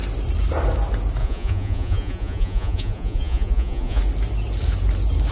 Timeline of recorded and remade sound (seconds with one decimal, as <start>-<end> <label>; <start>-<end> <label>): 0.0-1.2 recorded; 1.2-4.0 remade; 4.0-5.3 recorded